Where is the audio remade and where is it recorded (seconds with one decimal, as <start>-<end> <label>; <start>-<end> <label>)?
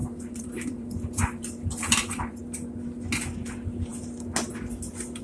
0.0-2.4 remade; 2.4-5.2 recorded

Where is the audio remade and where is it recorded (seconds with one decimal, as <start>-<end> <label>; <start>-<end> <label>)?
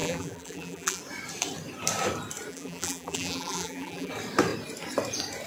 0.0-1.0 remade; 1.0-2.5 recorded; 2.5-4.1 remade; 4.1-5.5 recorded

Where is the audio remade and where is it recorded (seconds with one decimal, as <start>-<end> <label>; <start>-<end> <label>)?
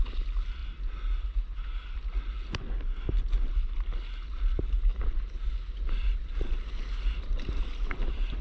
0.0-8.4 recorded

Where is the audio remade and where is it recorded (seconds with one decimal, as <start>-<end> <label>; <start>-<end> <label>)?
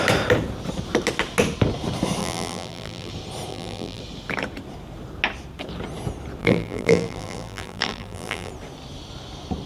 0.0-2.2 recorded; 2.2-3.1 remade; 3.1-3.5 recorded; 3.5-4.0 remade; 4.0-6.4 recorded; 6.4-8.5 remade; 8.5-9.7 recorded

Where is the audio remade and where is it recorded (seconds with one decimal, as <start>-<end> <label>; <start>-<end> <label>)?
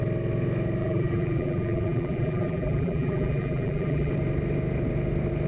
0.0-0.8 recorded; 0.8-4.1 remade; 4.1-5.5 recorded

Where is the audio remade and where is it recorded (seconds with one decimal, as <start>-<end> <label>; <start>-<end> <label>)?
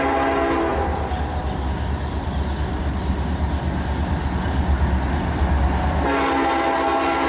0.0-7.3 recorded